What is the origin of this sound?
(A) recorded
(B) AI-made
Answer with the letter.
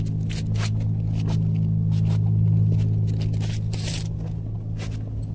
A